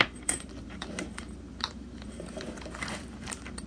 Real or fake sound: fake